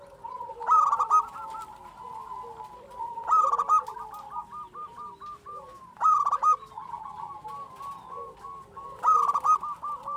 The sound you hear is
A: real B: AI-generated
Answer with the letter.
A